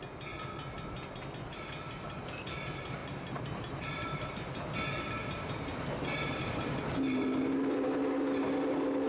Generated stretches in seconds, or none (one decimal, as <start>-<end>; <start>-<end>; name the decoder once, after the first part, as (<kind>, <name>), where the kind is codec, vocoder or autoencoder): 3.0-4.3 (vocoder, BigVGAN v2); 5.2-6.8